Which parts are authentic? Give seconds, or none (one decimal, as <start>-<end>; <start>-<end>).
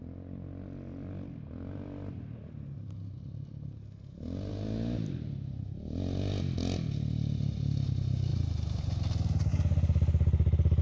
0.0-10.8